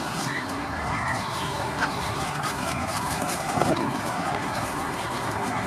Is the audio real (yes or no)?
no